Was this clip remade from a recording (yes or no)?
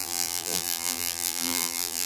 yes